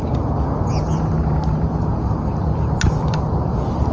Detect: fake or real real